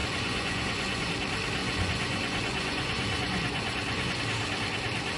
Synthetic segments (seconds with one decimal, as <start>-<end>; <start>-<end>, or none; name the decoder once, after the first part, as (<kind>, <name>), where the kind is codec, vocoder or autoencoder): 0.0-1.1 (vocoder, Vocos); 1.6-4.2